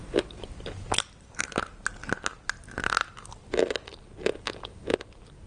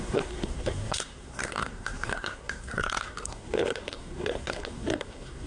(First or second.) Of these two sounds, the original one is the first